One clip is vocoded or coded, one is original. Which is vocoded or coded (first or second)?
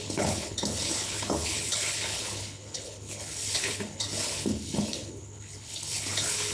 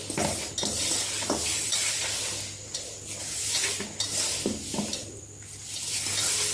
first